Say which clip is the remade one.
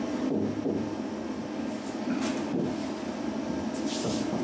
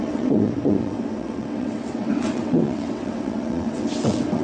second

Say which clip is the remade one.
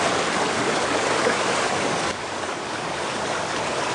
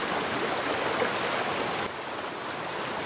first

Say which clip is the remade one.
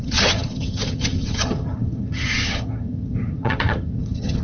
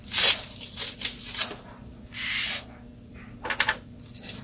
first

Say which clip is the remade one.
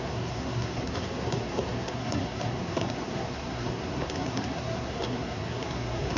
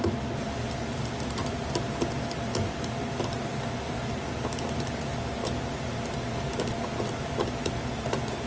first